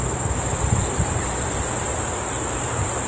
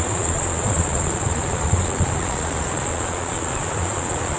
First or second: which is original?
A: first